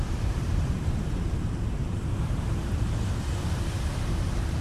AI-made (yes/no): yes